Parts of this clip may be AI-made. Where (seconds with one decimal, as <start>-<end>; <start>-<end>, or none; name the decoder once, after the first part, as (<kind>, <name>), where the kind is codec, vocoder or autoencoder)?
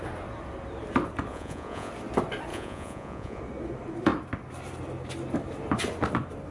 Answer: 1.3-1.9 (vocoder, Vocos); 2.5-3.4